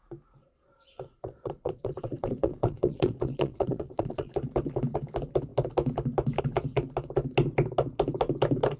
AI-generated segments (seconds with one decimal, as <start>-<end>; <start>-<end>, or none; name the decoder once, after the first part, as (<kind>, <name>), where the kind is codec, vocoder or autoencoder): 0.4-4.3 (vocoder, Vocos)